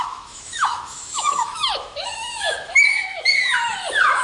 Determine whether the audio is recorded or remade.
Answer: remade